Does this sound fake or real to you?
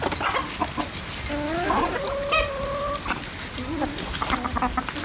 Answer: real